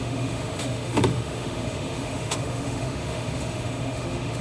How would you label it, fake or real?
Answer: fake